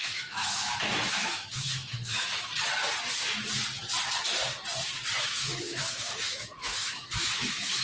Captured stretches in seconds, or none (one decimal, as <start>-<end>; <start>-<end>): 2.5-5.2